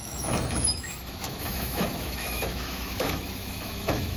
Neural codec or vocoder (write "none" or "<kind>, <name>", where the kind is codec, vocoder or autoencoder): autoencoder, DAC-VAE